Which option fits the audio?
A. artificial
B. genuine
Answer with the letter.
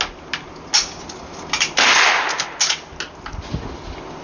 B